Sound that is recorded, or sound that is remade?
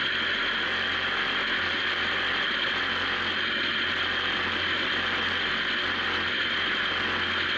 recorded